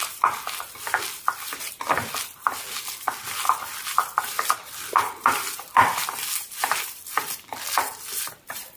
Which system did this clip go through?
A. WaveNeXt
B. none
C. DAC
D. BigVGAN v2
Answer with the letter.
D